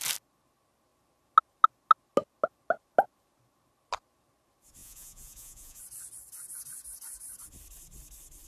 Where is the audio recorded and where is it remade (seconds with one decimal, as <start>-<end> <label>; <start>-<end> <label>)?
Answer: 0.0-4.8 recorded; 4.8-5.8 remade; 5.8-8.5 recorded

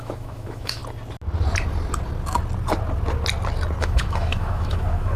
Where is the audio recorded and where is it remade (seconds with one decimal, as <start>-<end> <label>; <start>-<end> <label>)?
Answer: 0.0-0.8 remade; 0.8-3.8 recorded; 3.8-5.2 remade